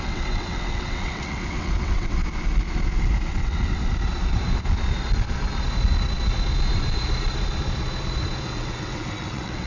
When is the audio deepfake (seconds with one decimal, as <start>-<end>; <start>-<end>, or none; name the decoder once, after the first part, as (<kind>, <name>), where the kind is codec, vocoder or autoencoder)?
0.0-2.2 (vocoder, WaveNeXt); 3.3-3.8; 8.5-9.7